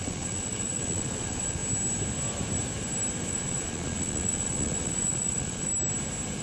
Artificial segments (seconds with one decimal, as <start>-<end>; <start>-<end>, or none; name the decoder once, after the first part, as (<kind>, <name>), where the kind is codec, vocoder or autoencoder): 0.0-1.6 (vocoder, Vocos); 3.3-5.7